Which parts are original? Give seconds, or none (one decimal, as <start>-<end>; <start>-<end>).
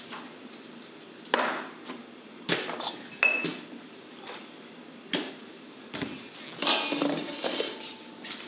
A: 0.0-8.5